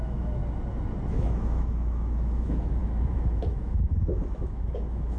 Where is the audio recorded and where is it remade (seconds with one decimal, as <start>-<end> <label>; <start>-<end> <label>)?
0.0-0.4 remade; 0.4-1.1 recorded; 1.1-5.2 remade